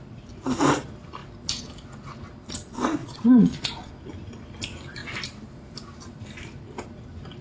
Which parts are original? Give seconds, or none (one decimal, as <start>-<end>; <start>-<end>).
0.0-3.0; 3.9-7.4